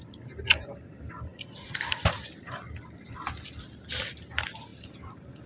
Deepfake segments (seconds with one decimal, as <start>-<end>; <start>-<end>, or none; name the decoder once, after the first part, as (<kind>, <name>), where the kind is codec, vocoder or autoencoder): none